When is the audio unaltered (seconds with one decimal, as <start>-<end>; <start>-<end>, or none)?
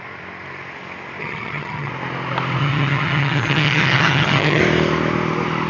0.0-1.2; 1.9-2.6; 4.6-5.7